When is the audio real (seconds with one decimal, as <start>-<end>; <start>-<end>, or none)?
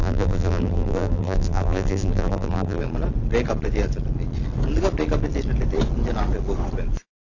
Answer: 2.8-7.3